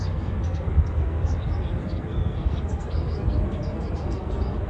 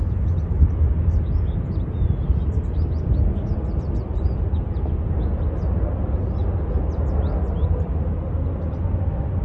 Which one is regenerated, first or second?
first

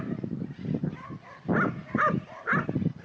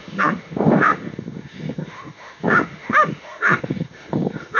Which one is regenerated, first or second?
second